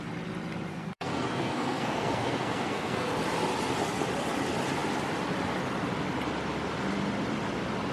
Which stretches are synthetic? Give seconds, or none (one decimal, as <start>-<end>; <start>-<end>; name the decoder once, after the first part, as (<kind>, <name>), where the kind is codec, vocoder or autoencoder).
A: 0.7-3.1 (codec, SNAC)